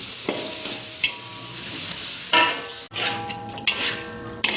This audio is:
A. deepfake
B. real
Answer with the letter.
B